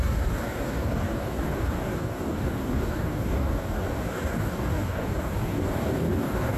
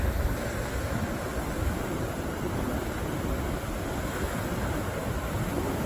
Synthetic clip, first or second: first